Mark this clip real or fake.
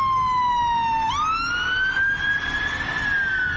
real